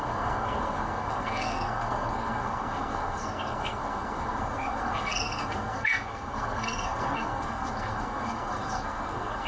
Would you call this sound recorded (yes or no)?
no